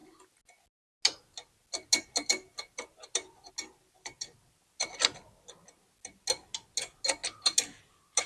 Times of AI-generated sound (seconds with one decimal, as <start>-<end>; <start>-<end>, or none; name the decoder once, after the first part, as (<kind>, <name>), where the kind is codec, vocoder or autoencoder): none